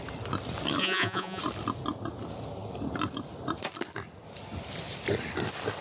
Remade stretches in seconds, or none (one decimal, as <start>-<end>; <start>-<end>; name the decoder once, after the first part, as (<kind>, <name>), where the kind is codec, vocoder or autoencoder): 0.8-1.4 (vocoder, Vocos)